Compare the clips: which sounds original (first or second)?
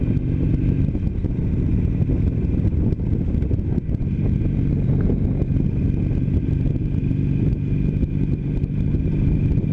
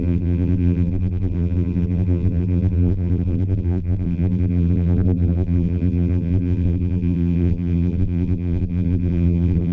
first